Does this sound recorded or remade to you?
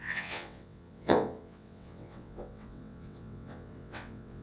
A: remade